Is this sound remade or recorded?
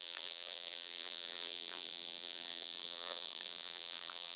remade